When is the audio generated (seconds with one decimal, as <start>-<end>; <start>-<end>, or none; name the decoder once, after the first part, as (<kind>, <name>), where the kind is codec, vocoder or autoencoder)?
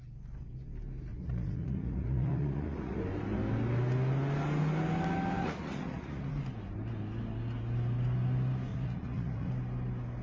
1.1-3.0 (vocoder, Vocos); 5.4-6.3; 8.7-9.5